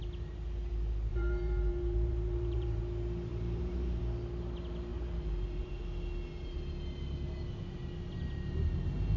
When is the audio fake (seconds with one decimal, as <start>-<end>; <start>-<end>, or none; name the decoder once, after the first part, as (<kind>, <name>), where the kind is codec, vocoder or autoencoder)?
1.1-2.8 (vocoder, BigVGAN v2); 3.3-4.0; 4.9-5.8